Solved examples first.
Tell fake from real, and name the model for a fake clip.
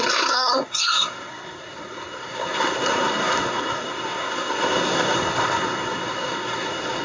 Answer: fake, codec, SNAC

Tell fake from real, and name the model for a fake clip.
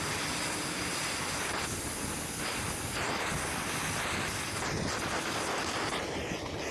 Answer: real